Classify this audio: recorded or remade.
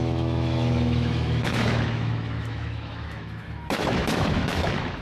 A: remade